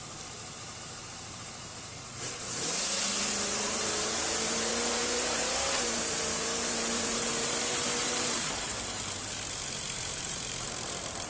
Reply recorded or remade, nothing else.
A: remade